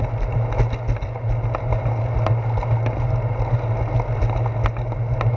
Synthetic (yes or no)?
no